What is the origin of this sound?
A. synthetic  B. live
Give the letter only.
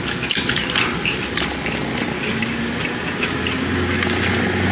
B